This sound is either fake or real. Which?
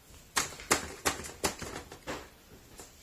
real